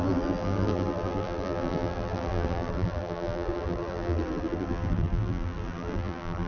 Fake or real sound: fake